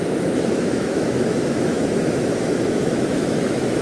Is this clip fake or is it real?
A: fake